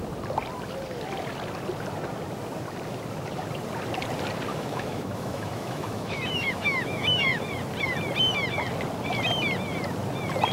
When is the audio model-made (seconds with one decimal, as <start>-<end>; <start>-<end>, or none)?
4.5-7.4